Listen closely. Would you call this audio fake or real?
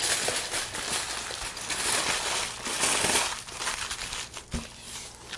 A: real